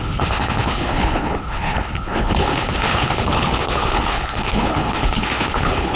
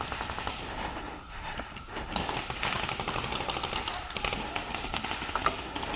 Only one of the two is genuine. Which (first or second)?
second